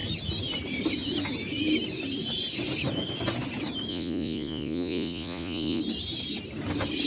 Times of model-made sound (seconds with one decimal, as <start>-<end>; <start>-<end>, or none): 3.9-5.8